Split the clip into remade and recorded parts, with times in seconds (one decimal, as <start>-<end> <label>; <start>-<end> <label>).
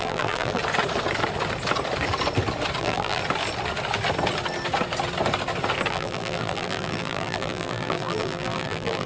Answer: 0.0-0.6 remade; 0.6-2.8 recorded; 2.8-3.2 remade; 3.2-5.9 recorded; 5.9-9.1 remade